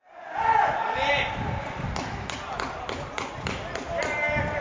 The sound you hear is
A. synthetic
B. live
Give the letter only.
B